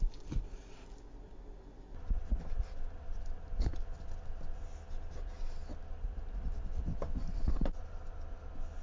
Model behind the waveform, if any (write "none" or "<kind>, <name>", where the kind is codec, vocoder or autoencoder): none